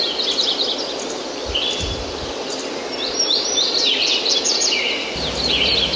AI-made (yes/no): no